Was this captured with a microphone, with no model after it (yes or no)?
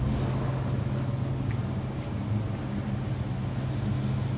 yes